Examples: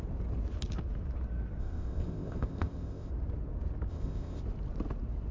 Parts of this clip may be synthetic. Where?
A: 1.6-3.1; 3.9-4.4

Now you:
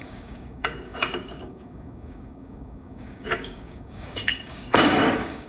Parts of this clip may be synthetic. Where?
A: 0.0-5.5

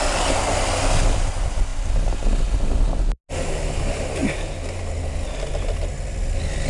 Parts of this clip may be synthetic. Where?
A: none

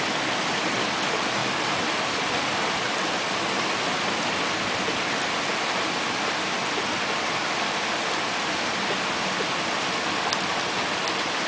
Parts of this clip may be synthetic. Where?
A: 1.4-5.4

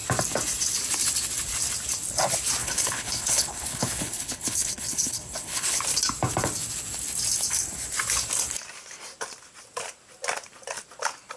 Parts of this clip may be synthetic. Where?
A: 2.6-5.8